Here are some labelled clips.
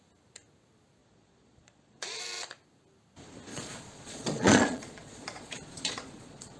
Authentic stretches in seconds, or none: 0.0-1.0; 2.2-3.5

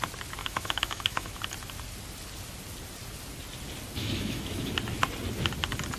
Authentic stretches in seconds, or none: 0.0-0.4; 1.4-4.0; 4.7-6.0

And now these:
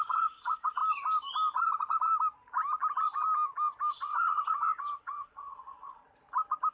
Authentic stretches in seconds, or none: 0.8-3.9; 6.0-6.7

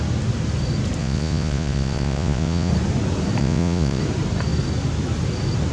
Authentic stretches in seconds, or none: 0.0-1.0; 2.7-3.4; 4.0-5.7